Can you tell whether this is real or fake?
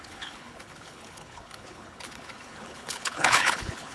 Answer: fake